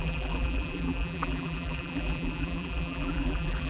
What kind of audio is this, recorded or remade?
remade